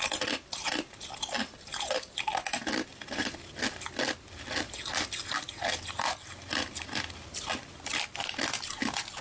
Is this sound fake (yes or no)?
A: no